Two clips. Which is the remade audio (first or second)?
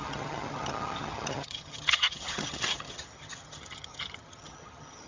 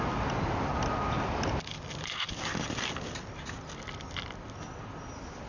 first